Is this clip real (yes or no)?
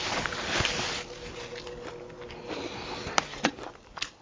yes